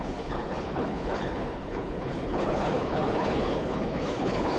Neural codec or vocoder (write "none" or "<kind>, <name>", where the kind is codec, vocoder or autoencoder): codec, HILCodec